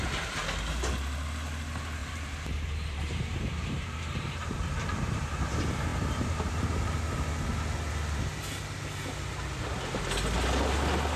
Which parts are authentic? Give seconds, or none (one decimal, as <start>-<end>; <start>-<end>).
0.0-2.0; 5.4-11.2